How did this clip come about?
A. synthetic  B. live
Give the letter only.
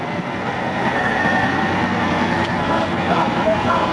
A